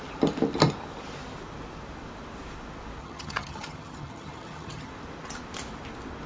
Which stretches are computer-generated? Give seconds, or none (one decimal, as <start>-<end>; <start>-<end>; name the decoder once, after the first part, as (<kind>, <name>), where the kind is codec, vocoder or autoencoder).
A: 3.0-4.9 (vocoder, HiFi-GAN)